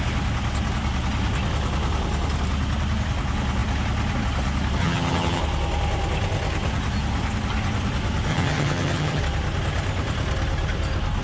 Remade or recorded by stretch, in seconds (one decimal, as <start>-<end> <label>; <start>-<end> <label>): 0.0-4.8 recorded; 4.8-5.4 remade; 5.4-8.3 recorded; 8.3-9.2 remade; 9.2-11.2 recorded